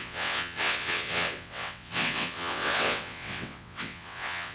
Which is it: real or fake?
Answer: fake